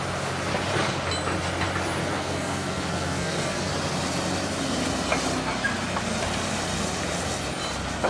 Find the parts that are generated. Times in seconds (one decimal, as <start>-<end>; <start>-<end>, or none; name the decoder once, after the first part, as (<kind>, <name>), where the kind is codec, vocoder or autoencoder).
2.0-3.7 (codec, SNAC)